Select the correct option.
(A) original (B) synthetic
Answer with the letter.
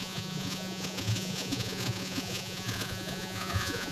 B